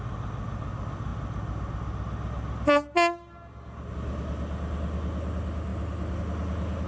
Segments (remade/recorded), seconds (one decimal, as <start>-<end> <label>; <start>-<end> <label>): 0.0-6.9 recorded